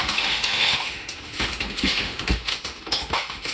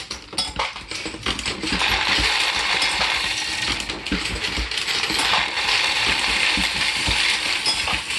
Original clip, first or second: second